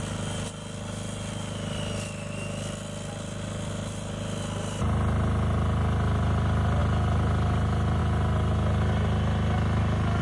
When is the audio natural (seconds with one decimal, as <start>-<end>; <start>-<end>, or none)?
0.0-10.2